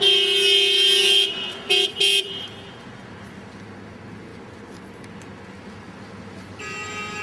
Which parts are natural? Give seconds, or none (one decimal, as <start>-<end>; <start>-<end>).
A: 0.0-7.2